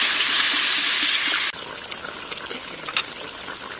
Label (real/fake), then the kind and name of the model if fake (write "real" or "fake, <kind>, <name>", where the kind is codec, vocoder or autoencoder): real